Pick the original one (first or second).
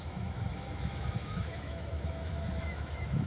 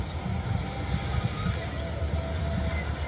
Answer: second